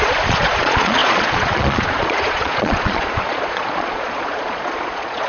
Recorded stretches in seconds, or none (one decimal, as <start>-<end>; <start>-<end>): none